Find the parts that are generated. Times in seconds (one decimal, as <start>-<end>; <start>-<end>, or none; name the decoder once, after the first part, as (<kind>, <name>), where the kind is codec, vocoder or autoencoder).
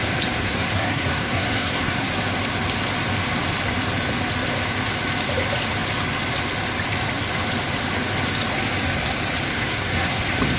0.4-2.1 (codec, SNAC); 9.5-10.2